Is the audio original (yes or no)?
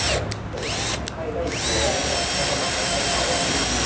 yes